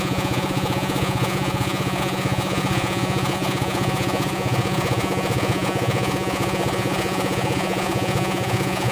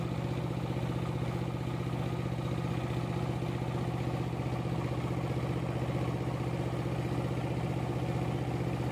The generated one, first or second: first